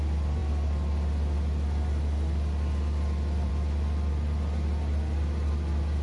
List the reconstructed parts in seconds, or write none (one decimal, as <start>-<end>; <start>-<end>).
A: none